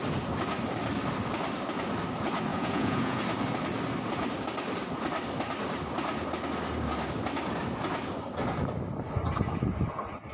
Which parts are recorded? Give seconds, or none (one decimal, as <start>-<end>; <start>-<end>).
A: 0.0-2.5; 3.2-10.3